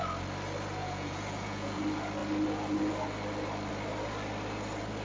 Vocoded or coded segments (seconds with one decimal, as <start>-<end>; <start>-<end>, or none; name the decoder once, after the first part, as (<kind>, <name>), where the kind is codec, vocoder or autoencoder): 0.8-1.8 (vocoder, Vocos)